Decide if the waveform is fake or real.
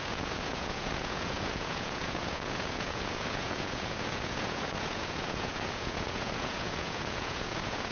fake